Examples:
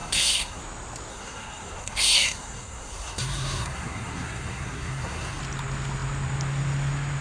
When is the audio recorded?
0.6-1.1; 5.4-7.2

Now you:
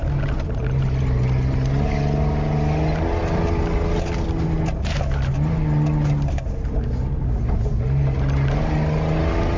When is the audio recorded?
0.0-9.6

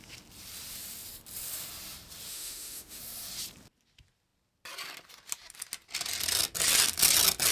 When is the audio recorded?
0.0-2.3; 3.0-7.5

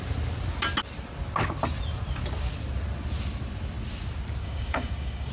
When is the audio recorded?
0.0-4.4

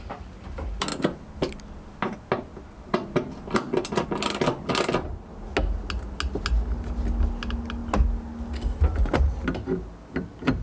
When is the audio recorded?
0.0-10.6

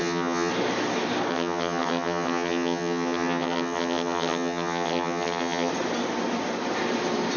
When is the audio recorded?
0.5-1.3; 5.7-7.4